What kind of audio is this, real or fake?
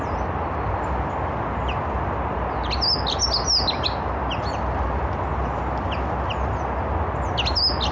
real